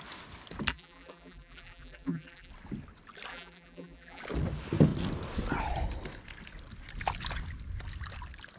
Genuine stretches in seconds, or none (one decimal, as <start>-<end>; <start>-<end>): 0.0-0.7; 2.5-3.3; 4.2-8.6